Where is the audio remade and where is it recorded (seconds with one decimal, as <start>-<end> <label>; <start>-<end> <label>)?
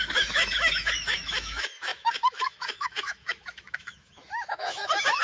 0.0-5.2 remade